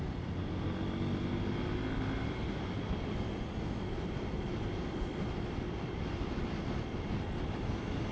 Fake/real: real